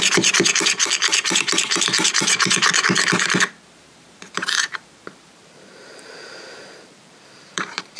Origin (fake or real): fake